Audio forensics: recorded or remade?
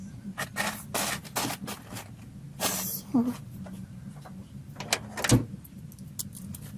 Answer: recorded